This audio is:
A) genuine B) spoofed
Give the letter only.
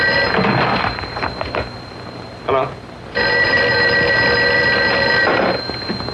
A